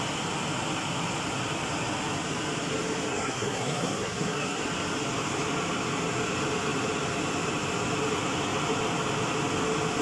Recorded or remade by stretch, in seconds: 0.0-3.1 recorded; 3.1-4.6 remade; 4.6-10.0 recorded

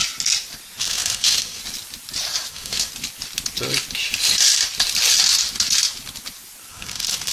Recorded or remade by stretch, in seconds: 0.0-0.8 recorded; 0.8-1.6 remade; 1.6-2.5 recorded; 2.5-2.9 remade; 2.9-6.7 recorded; 6.7-7.3 remade

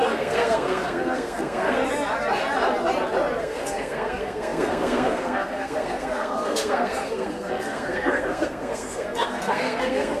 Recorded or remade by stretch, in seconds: 0.0-1.8 remade; 1.8-3.4 recorded; 3.4-10.2 remade

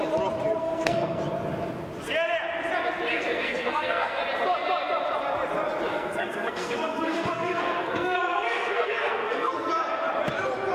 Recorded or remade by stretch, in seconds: 0.0-0.6 recorded; 0.6-1.2 remade; 1.2-3.1 recorded; 3.1-4.2 remade; 4.2-5.9 recorded; 5.9-9.7 remade; 9.7-10.7 recorded